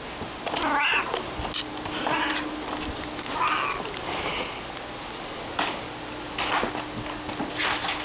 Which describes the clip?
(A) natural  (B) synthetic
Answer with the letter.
A